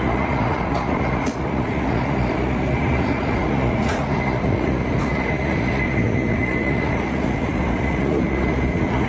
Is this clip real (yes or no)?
no